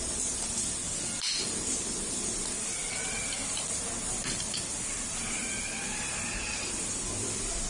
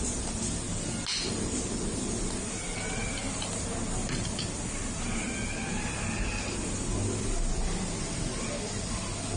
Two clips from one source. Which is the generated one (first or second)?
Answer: first